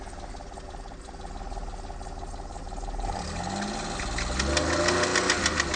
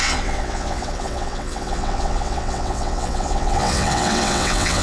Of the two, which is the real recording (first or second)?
first